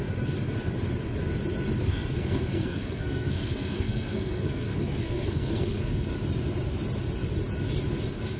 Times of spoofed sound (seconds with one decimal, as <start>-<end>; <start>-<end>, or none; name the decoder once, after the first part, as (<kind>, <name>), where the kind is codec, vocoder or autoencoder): 1.9-6.1 (codec, SNAC)